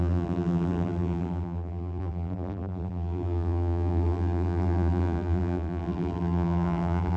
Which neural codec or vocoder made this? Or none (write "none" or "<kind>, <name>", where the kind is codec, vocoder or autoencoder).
vocoder, BigVGAN v2